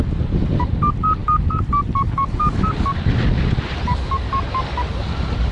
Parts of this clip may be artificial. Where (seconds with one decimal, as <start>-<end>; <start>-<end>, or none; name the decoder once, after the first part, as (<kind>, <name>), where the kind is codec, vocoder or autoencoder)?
none